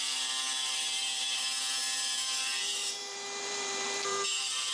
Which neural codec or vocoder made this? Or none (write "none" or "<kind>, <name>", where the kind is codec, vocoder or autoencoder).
vocoder, BigVGAN v2